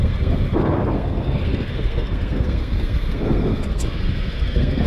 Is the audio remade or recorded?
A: remade